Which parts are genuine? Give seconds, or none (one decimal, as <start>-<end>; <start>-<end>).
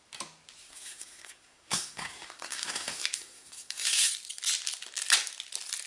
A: 0.0-0.6; 4.1-5.9